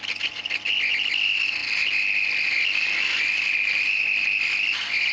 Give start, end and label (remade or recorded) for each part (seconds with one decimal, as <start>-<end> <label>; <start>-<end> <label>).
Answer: 0.0-5.1 recorded